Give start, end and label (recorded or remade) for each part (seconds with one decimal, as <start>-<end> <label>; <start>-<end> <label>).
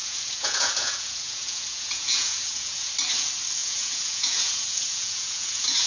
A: 0.0-2.9 remade; 2.9-3.6 recorded; 3.6-5.9 remade